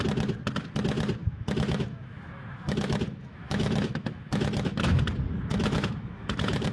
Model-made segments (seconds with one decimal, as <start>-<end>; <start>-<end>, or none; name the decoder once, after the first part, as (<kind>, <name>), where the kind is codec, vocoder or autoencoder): 1.2-5.0 (autoencoder, DAC-VAE); 5.5-6.7